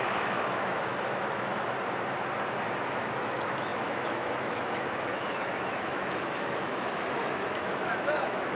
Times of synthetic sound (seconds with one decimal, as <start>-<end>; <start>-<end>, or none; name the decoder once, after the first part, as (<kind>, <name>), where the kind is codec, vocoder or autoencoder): 0.0-1.5 (autoencoder, DAC-VAE); 2.8-8.5